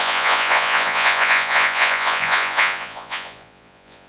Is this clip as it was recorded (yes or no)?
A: no